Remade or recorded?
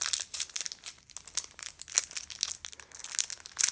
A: recorded